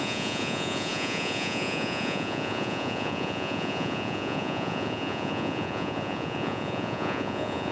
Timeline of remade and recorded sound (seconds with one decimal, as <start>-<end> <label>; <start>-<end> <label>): 0.0-7.7 remade